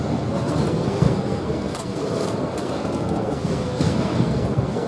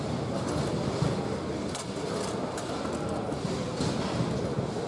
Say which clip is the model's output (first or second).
first